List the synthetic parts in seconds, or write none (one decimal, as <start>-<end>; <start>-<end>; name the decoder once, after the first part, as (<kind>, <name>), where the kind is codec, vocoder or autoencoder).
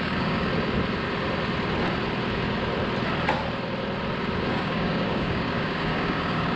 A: 0.0-0.5 (codec, DAC); 4.5-6.6